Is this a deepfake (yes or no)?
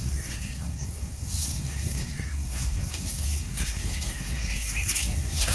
yes